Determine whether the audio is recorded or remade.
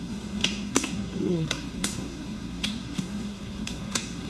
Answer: remade